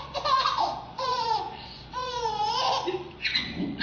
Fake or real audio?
fake